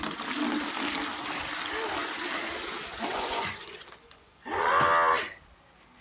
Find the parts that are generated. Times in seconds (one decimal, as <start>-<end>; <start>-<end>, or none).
3.1-4.7